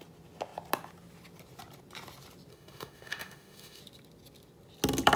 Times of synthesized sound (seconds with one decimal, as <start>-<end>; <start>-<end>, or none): 2.5-3.8